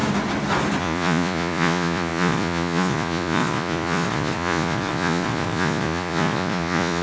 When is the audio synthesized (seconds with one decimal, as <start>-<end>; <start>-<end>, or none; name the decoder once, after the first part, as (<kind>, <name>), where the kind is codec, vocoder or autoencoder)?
0.8-7.0 (vocoder, Vocos)